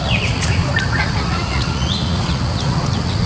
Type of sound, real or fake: fake